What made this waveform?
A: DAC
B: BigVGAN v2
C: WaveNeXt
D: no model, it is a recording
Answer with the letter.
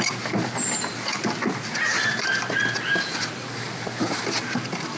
D